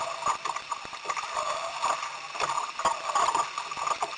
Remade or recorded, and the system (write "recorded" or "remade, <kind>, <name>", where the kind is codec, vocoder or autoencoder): recorded